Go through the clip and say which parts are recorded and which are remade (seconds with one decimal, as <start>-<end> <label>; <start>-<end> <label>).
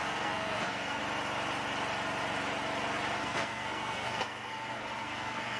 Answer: 0.0-1.0 remade; 1.0-3.2 recorded; 3.2-5.6 remade